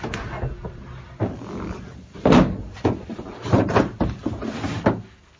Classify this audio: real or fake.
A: real